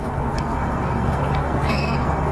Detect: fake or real fake